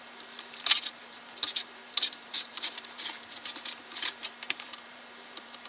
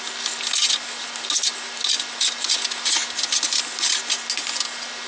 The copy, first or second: first